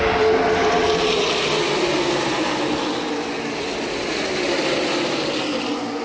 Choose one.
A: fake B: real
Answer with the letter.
B